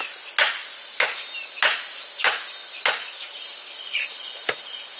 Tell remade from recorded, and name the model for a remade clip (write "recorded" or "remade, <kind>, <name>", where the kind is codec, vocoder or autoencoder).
recorded